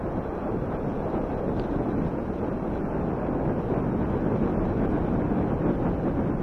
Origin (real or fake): real